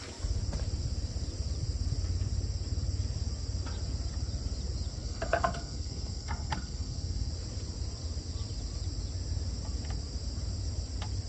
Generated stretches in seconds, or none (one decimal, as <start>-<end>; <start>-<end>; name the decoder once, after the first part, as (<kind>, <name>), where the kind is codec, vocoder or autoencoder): 5.0-7.3 (codec, SNAC)